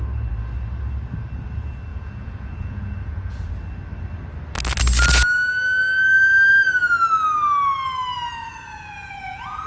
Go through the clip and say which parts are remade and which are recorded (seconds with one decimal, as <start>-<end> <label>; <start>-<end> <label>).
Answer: 0.0-1.9 recorded; 1.9-3.5 remade; 3.5-8.4 recorded; 8.4-9.7 remade